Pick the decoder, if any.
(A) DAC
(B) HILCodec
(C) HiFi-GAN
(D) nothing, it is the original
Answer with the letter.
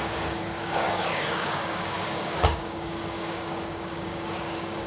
A